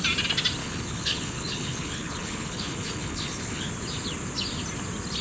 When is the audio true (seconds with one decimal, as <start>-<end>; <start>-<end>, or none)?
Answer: 0.0-0.6; 3.7-5.2